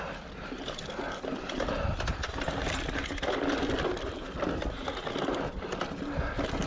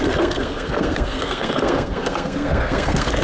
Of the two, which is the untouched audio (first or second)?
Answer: first